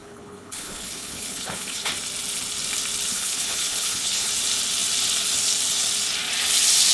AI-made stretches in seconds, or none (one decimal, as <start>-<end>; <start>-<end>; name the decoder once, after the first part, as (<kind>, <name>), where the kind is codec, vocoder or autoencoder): 0.0-1.9 (codec, HILCodec); 3.1-4.3